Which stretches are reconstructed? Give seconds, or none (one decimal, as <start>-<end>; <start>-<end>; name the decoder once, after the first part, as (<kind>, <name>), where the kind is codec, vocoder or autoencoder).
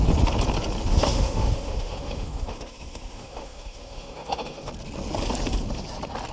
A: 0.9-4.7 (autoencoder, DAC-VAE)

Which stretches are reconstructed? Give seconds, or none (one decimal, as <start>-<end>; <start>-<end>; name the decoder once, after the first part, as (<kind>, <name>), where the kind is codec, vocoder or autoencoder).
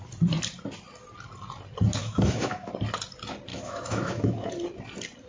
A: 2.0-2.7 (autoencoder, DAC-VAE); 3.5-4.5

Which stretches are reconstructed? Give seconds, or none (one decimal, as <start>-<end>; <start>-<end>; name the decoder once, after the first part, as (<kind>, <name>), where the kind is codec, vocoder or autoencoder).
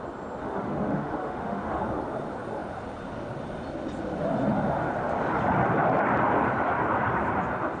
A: 0.4-1.8 (autoencoder, DAC-VAE)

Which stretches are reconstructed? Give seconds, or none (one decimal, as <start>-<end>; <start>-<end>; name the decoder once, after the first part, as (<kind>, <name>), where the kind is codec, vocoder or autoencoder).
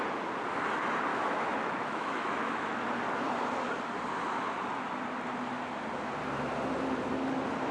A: 1.1-2.8 (autoencoder, DAC-VAE)